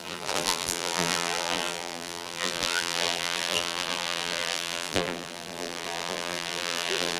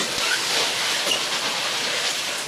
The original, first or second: second